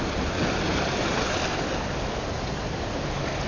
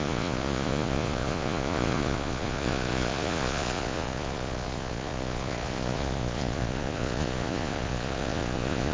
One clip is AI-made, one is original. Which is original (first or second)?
first